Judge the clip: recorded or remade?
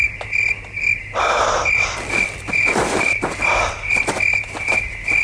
recorded